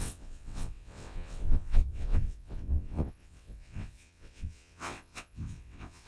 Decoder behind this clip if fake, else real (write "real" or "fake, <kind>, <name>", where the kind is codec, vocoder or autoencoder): fake, vocoder, WaveNeXt